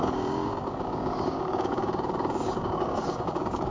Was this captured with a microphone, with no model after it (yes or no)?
no